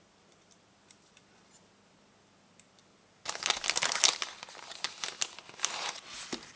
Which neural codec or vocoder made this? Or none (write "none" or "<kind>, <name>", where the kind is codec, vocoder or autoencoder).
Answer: none